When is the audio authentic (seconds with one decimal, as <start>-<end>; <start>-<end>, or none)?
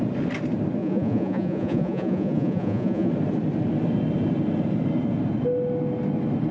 0.0-0.8; 3.1-6.5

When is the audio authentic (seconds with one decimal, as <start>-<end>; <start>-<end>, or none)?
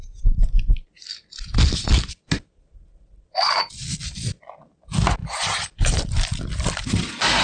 0.0-5.2; 6.3-7.4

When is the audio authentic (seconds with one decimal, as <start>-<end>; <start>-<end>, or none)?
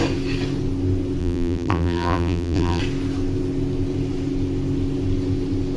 0.0-1.2; 2.8-5.8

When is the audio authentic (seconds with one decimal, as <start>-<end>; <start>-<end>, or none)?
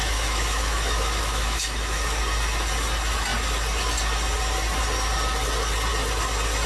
2.2-6.7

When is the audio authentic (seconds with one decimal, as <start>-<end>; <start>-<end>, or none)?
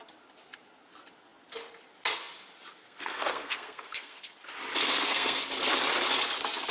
0.0-2.8; 4.3-4.8; 5.4-6.7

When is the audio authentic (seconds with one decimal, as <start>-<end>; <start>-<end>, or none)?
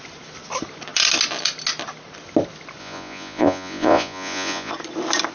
0.0-2.8; 4.7-5.3